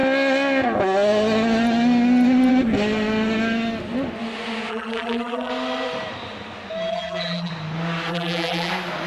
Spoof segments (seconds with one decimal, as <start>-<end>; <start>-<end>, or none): 4.7-5.5; 6.9-7.5; 8.1-8.7